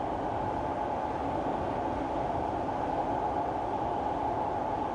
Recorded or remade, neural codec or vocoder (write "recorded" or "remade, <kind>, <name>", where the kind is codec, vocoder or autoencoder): recorded